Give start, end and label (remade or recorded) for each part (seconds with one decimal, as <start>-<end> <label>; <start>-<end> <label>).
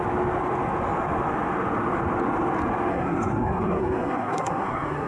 0.0-2.9 recorded; 2.9-5.1 remade